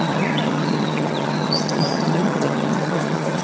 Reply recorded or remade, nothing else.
remade